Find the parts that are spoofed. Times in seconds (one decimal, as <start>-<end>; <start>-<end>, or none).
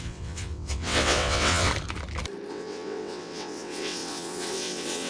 0.0-1.7; 2.5-5.1